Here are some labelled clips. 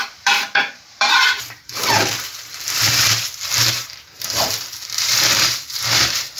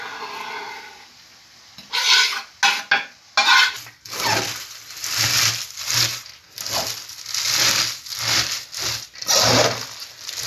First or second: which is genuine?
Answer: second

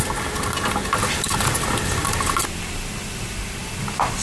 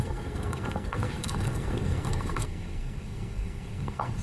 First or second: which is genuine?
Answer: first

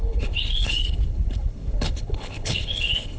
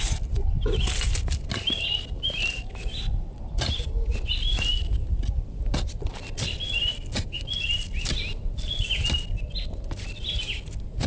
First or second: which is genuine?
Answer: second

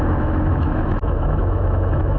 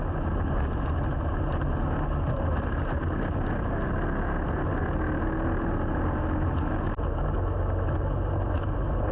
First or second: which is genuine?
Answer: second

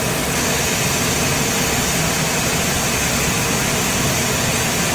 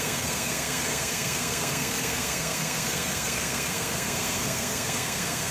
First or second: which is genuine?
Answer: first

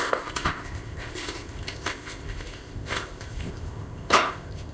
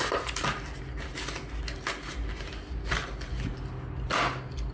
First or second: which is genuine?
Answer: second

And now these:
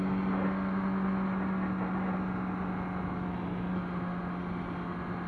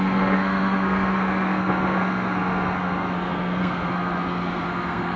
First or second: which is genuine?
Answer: first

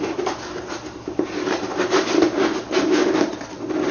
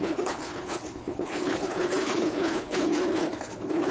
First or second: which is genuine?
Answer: first